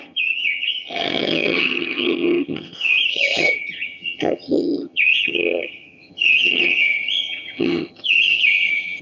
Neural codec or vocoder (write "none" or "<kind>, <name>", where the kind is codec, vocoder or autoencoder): vocoder, HiFi-GAN